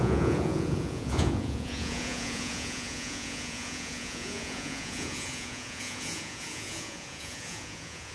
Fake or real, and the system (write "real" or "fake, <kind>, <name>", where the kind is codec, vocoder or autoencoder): fake, vocoder, Vocos